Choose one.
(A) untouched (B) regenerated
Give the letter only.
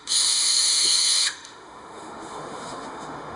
B